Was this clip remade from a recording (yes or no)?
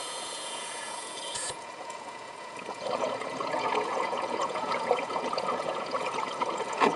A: yes